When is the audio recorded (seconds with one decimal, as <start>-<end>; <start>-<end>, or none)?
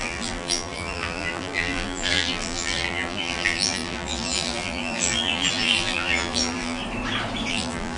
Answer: 6.8-7.5